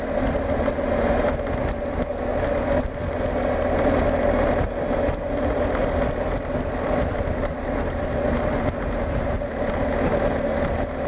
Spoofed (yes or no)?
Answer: no